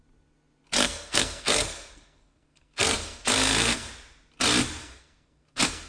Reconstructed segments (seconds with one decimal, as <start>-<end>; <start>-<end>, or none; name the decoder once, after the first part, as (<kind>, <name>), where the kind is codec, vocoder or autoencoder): 0.8-3.9 (codec, SNAC); 4.8-5.9